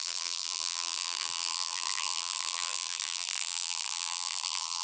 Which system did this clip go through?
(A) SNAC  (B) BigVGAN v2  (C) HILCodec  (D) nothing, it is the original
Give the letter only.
B